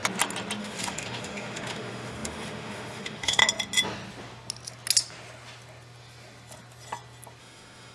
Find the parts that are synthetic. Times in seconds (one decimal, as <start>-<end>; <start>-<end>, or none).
0.6-3.4; 7.4-7.9